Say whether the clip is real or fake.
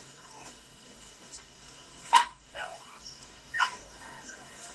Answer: fake